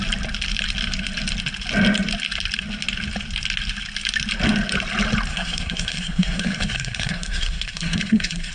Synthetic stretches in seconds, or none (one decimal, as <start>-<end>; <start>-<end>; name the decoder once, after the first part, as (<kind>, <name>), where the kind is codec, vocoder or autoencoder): 5.3-8.5 (codec, SNAC)

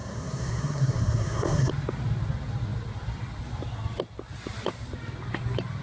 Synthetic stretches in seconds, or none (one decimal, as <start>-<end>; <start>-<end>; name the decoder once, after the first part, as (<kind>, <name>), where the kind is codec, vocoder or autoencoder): 0.0-1.7 (codec, SNAC)

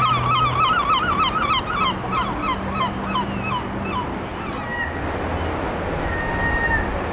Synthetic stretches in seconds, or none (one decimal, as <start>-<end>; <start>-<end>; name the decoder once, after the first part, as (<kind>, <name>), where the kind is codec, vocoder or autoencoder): none

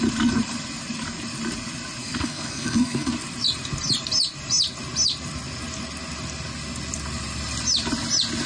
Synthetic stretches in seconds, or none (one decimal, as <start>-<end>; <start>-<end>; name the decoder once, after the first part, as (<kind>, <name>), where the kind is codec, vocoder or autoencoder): 2.0-3.1 (codec, SNAC)

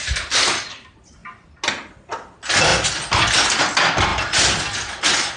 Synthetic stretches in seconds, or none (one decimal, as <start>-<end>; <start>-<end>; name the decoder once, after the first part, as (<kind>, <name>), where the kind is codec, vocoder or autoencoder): none

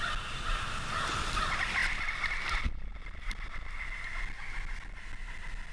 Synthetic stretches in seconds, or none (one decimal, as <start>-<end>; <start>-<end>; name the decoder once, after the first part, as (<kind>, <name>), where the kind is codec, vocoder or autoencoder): none